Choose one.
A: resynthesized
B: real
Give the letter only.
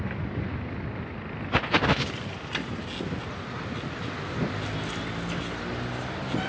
B